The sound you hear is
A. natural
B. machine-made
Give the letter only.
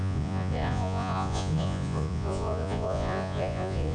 B